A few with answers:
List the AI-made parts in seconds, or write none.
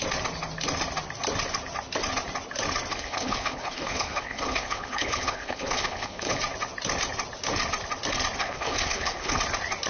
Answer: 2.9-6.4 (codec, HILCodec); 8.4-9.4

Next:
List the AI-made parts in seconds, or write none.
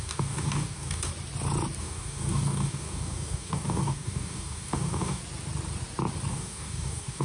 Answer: 0.0-1.1 (codec, DAC); 1.8-5.2; 6.3-7.2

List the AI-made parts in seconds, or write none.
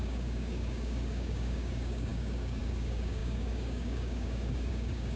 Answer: 0.0-5.2 (codec, DAC)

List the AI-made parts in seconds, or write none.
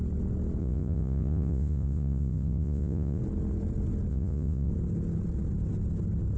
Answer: 0.6-3.2 (vocoder, Vocos); 4.1-4.7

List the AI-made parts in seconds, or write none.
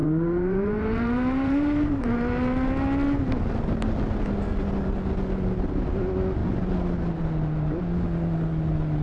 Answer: 0.0-2.7 (vocoder, BigVGAN v2)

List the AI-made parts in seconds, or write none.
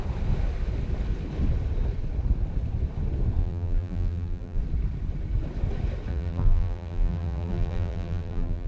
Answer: 3.4-4.6 (vocoder, BigVGAN v2); 6.1-8.7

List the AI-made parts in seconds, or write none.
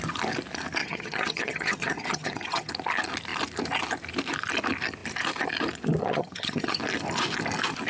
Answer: 0.8-2.7 (vocoder, HiFi-GAN); 6.0-6.8